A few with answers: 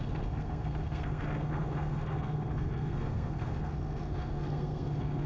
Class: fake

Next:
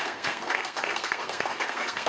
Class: fake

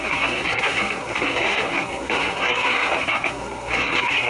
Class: fake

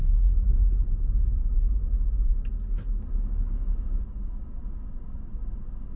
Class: real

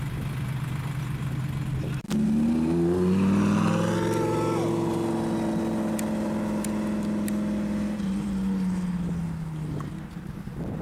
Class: real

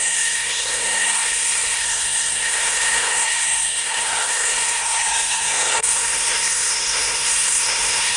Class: fake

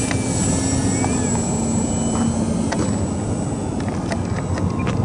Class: real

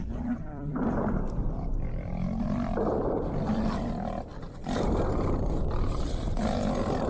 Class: fake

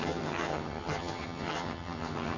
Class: fake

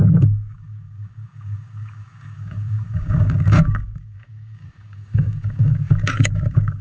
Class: fake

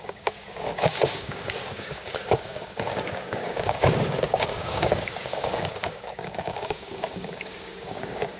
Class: fake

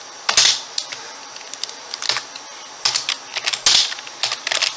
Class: real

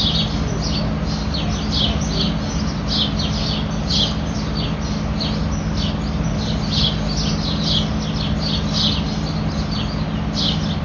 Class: real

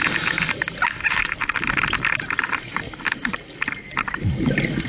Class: real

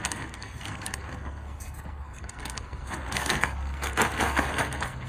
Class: fake